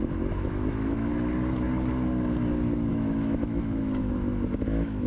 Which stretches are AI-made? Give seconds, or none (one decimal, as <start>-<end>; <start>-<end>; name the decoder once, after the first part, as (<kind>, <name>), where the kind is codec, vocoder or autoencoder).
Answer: 0.0-1.1 (autoencoder, DAC-VAE); 2.9-5.1